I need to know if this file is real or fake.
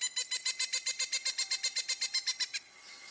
real